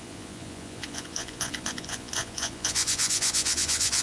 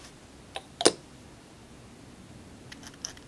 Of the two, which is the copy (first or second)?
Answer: first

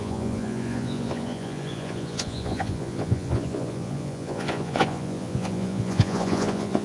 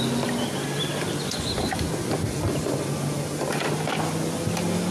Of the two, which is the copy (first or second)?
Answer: first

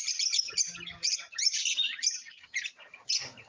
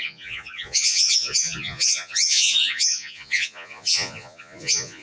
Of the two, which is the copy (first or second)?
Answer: second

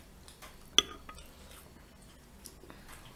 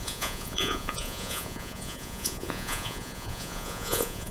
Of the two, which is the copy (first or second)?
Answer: second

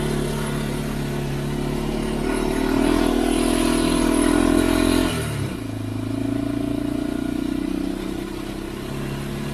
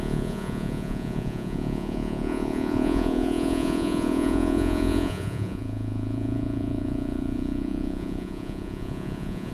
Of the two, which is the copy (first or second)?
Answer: second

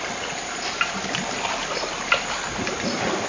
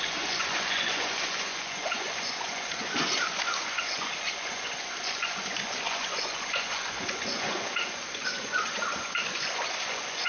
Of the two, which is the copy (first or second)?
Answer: second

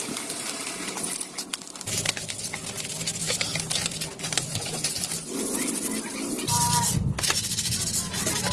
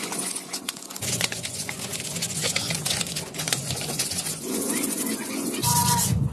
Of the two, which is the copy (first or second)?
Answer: second